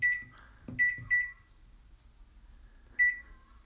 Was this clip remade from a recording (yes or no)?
no